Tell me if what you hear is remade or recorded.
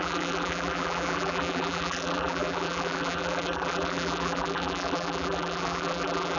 remade